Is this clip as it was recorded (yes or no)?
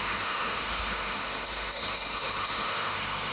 no